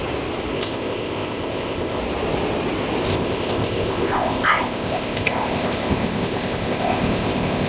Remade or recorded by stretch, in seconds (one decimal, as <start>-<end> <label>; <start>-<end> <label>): 0.0-0.5 recorded; 0.5-2.0 remade; 2.0-3.1 recorded; 3.1-7.7 remade